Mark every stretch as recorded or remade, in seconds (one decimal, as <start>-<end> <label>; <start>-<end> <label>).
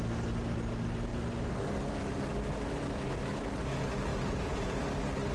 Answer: 0.0-4.1 recorded; 4.1-4.8 remade; 4.8-5.3 recorded